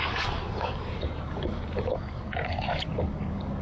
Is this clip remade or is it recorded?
remade